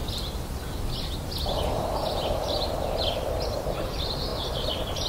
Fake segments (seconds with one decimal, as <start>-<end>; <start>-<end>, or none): none